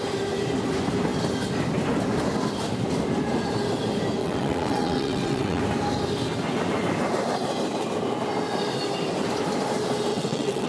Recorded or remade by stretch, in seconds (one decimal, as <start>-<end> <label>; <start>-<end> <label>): 0.0-4.2 recorded; 4.2-5.6 remade; 5.6-10.1 recorded; 10.1-10.7 remade